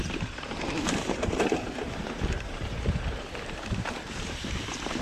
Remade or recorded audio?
remade